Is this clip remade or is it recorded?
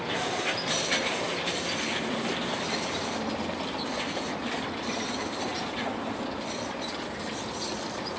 remade